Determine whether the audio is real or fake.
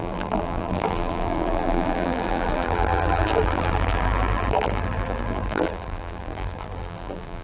fake